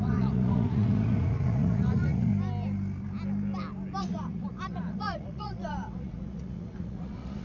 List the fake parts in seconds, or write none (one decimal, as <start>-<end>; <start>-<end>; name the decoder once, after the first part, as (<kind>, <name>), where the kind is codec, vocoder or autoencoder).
0.0-2.3 (vocoder, Vocos); 4.0-7.4